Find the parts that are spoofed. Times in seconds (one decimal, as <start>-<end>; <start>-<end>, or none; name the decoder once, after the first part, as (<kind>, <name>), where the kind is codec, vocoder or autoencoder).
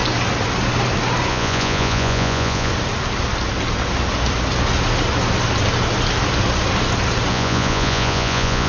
1.3-2.7 (vocoder, Vocos); 7.3-8.7